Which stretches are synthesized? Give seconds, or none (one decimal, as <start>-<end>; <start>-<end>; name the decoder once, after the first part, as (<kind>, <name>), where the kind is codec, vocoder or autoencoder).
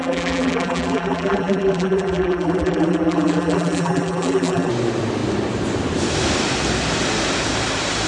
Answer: 0.0-4.7 (vocoder, BigVGAN v2)